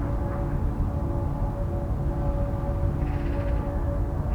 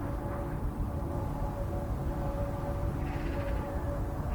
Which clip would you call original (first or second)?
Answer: first